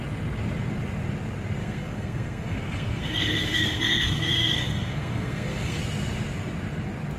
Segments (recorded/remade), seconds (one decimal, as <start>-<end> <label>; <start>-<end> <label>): 0.0-1.6 recorded; 1.6-5.8 remade; 5.8-7.2 recorded